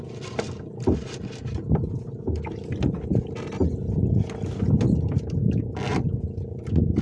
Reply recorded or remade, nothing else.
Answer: recorded